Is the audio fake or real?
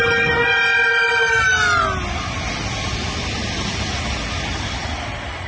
real